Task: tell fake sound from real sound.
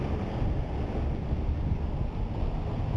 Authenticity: real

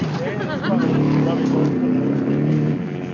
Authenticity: real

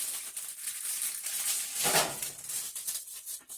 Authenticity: real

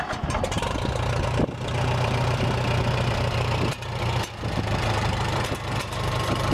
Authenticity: real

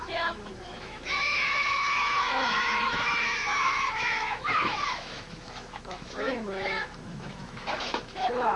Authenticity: fake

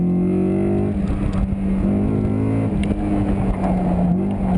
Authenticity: real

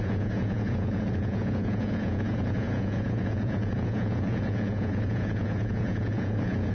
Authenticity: fake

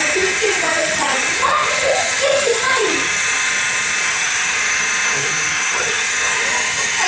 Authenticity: fake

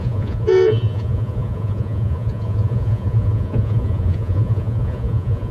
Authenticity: fake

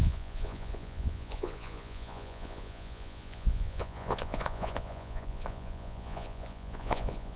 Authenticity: fake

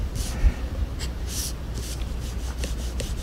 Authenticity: real